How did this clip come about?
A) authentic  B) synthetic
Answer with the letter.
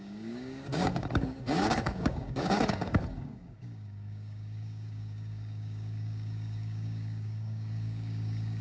B